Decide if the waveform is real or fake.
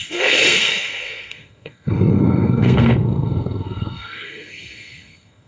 fake